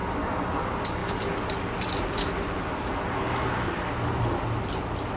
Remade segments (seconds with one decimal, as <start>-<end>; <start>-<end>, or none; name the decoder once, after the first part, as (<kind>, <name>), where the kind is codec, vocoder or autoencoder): 0.5-1.0 (vocoder, BigVGAN v2); 3.9-5.2